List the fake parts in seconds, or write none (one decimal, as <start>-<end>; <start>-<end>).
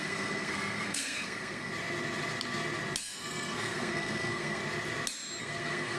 0.0-1.7; 3.0-4.6; 5.4-6.0